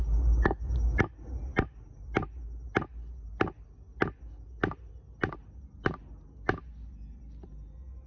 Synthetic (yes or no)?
no